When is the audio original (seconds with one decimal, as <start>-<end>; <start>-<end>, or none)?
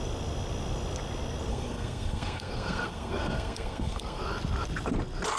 0.0-1.5; 4.2-5.4